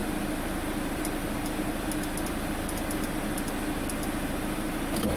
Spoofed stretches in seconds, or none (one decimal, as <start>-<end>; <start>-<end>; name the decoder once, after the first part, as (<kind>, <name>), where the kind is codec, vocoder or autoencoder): 0.0-3.1 (vocoder, BigVGAN v2)